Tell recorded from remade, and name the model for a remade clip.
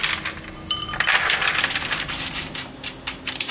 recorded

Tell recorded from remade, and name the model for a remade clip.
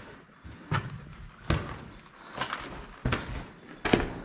recorded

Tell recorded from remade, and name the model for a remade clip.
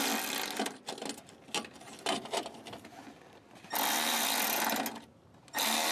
recorded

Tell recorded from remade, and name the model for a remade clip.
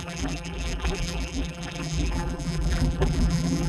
remade, vocoder, BigVGAN v2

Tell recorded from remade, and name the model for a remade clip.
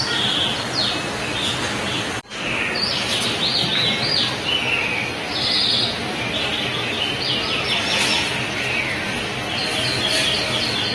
recorded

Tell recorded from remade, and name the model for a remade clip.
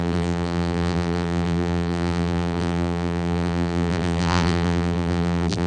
remade, vocoder, BigVGAN v2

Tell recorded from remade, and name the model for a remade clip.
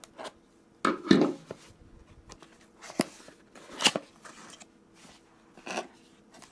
recorded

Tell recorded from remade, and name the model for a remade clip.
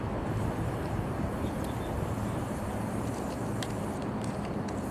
remade, vocoder, BigVGAN v2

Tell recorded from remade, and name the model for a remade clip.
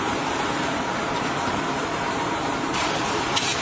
remade, vocoder, BigVGAN v2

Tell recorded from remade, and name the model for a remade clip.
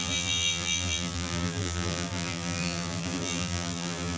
remade, vocoder, BigVGAN v2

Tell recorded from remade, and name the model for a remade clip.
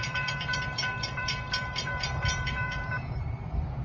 remade, vocoder, BigVGAN v2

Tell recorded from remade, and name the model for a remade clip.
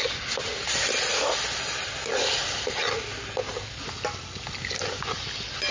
recorded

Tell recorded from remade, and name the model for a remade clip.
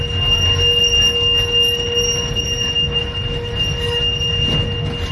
recorded